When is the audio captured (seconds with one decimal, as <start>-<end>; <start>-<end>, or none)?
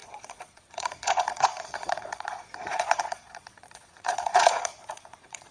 none